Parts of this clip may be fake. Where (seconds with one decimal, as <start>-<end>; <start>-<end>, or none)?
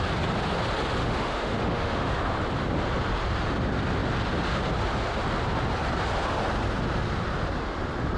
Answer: 1.0-2.2